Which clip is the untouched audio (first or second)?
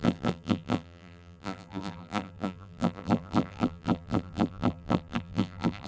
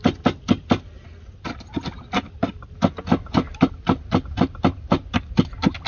second